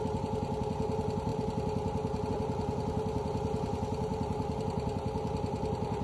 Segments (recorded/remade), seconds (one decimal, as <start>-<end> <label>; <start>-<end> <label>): 0.0-6.0 recorded